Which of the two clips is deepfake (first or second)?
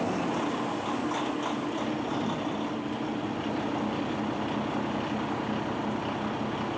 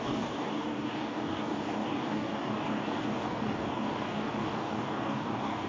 second